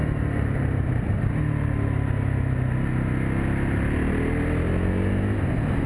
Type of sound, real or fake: real